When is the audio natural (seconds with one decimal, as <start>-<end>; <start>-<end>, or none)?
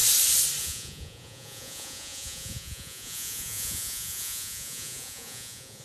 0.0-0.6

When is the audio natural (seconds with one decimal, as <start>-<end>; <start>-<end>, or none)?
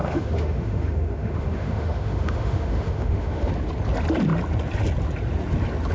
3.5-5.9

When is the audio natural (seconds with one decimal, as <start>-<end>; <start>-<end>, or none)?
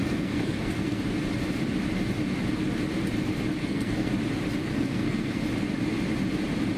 1.0-3.6; 4.1-4.6; 5.4-6.8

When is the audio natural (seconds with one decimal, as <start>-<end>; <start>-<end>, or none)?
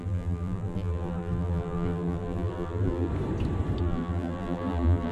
3.1-3.8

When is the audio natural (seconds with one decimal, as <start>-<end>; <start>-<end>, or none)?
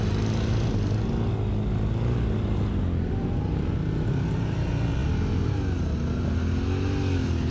0.0-7.5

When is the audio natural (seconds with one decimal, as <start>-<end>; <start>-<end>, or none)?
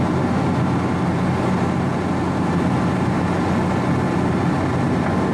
0.0-5.3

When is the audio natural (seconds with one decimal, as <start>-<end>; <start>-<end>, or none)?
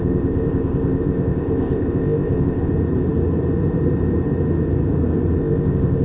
2.7-5.4